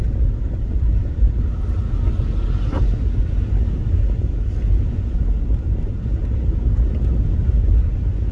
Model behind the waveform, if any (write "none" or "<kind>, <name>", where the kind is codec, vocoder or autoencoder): none